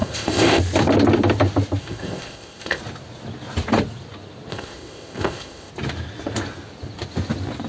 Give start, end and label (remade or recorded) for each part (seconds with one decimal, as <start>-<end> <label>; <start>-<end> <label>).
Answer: 0.0-0.6 remade; 0.6-1.8 recorded; 1.8-2.8 remade; 2.8-4.5 recorded; 4.5-5.7 remade; 5.7-7.7 recorded